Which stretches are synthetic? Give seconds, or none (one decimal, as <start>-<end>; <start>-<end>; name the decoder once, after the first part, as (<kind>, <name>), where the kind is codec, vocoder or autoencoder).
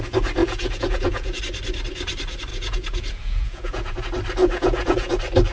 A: 0.4-1.4 (vocoder, Vocos); 2.5-4.0; 4.4-5.1